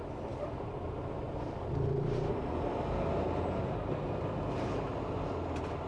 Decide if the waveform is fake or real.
real